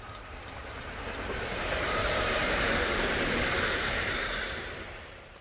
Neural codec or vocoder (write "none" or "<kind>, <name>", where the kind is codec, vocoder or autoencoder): vocoder, BigVGAN v2